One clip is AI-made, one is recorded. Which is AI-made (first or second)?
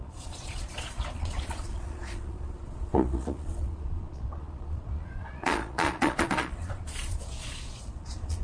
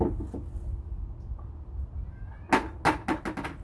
first